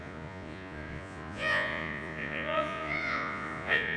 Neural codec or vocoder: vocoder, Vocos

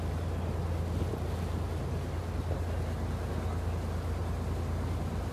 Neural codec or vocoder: none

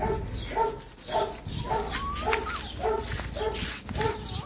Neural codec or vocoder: none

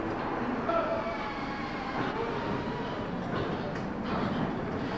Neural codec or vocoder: none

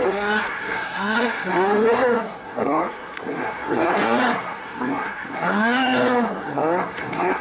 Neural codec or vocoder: codec, SNAC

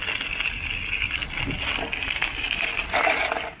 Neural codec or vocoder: none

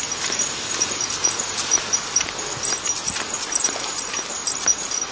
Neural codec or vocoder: none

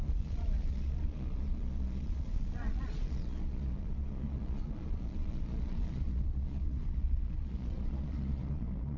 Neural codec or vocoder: vocoder, Vocos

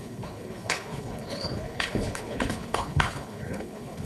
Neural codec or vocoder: codec, HILCodec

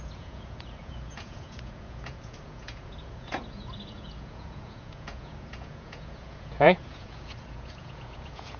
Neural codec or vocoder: vocoder, Vocos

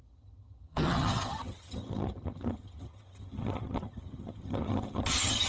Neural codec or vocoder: vocoder, HiFi-GAN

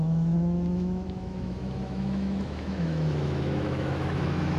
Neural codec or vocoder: autoencoder, DAC-VAE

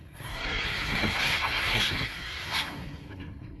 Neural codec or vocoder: codec, SNAC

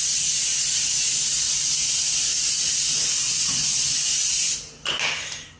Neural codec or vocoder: none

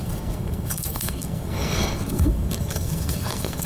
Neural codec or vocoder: codec, SNAC